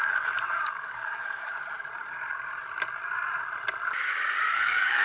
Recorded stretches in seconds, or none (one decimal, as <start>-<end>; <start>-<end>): 1.5-4.5